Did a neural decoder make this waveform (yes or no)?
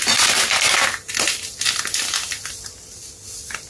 no